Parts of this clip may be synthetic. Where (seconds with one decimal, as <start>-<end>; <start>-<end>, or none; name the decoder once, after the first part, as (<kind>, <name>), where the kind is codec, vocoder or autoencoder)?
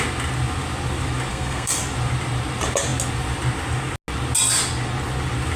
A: 1.3-1.8 (codec, SNAC)